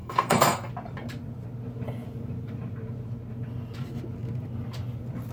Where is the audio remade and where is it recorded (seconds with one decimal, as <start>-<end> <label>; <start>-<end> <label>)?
0.0-0.7 remade; 0.7-5.3 recorded